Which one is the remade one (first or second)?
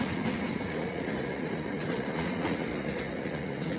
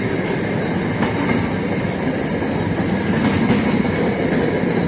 first